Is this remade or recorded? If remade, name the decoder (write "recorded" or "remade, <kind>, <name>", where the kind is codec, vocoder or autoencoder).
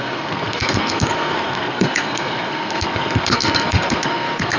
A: remade, codec, SNAC